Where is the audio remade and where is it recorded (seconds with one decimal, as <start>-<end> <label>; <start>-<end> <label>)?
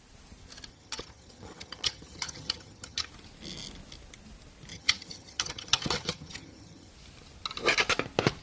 0.0-0.7 recorded; 0.7-3.1 remade; 3.1-4.7 recorded; 4.7-6.9 remade; 6.9-8.4 recorded